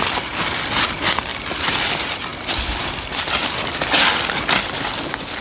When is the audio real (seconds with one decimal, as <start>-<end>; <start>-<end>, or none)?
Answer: 0.0-2.3; 3.6-5.4